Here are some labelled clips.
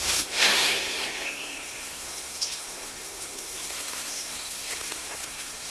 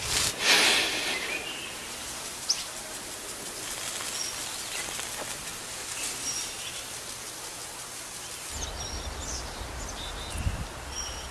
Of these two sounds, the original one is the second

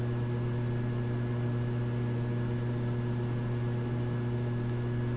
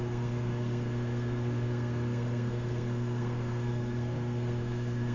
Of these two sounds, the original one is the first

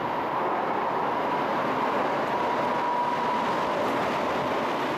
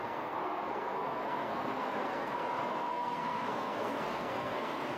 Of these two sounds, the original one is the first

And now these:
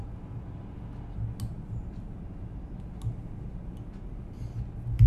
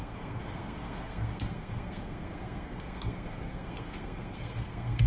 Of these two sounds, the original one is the first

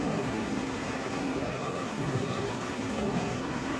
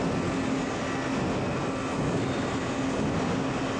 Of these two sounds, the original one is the second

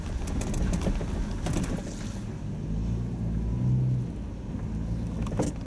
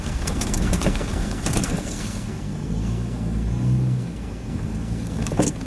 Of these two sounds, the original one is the first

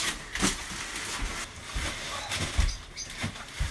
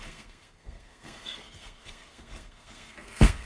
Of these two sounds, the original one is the first